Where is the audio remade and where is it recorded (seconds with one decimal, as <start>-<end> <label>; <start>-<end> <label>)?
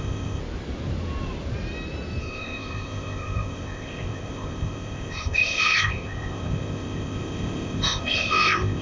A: 0.0-0.4 remade; 0.4-2.2 recorded; 2.2-8.8 remade